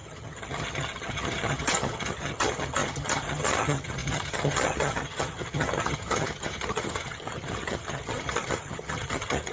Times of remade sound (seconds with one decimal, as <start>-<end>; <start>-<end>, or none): 0.0-9.5